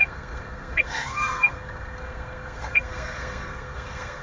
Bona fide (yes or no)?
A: no